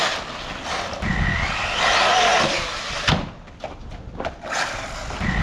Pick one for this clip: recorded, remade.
recorded